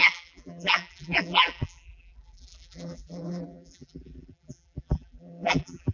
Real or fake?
fake